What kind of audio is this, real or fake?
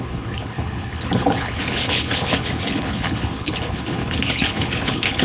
fake